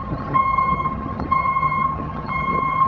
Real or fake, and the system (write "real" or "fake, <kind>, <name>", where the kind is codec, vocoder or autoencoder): fake, vocoder, HiFi-GAN